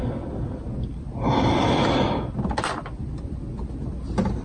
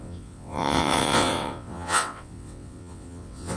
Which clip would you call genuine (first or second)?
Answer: first